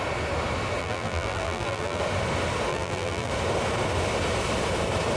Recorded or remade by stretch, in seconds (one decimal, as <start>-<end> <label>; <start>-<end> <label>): 0.0-0.8 recorded; 0.8-2.0 remade; 2.0-2.7 recorded; 2.7-3.3 remade; 3.3-5.2 recorded

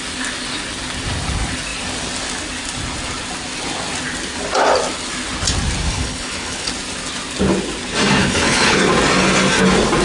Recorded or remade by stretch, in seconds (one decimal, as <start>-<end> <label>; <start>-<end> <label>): 0.0-5.8 recorded; 5.8-6.7 remade; 6.7-8.2 recorded; 8.2-8.8 remade; 8.8-10.0 recorded

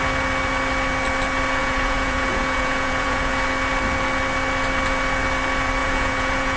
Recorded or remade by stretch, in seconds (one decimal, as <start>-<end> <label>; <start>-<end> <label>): 0.0-1.6 recorded; 1.6-3.3 remade; 3.3-5.8 recorded; 5.8-6.6 remade

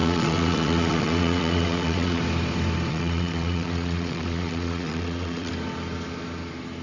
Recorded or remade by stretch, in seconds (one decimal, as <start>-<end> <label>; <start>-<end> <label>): 0.0-2.2 remade; 2.2-2.9 recorded; 2.9-5.5 remade; 5.5-6.8 recorded

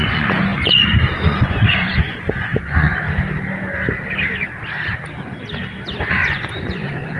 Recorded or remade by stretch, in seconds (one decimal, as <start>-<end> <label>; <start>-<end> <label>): 0.0-2.9 remade; 2.9-6.1 recorded; 6.1-7.2 remade

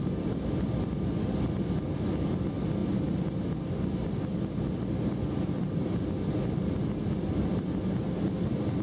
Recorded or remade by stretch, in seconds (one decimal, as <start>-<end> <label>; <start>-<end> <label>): 0.0-8.8 recorded

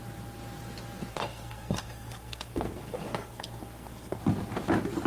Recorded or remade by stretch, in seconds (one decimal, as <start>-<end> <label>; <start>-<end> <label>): 0.0-1.1 recorded; 1.1-4.2 remade; 4.2-5.1 recorded